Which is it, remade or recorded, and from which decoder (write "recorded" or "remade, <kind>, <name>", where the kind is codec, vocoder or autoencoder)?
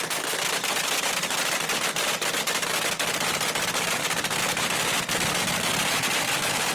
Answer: recorded